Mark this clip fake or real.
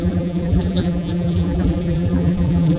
fake